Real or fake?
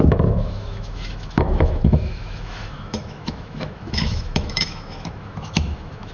fake